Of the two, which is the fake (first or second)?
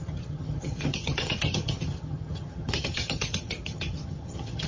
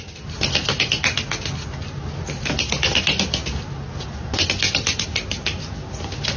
first